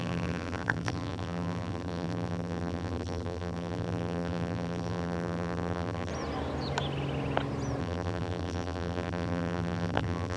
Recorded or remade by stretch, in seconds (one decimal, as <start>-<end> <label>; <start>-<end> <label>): 0.0-6.1 remade; 6.1-7.8 recorded; 7.8-10.4 remade